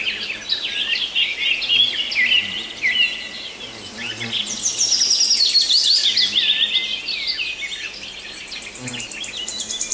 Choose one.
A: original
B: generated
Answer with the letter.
A